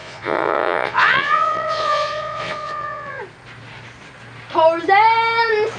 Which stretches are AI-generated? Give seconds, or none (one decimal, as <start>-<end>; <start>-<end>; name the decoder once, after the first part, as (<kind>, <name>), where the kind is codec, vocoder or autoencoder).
0.0-3.2 (vocoder, Vocos)